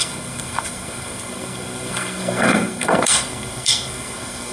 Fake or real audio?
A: fake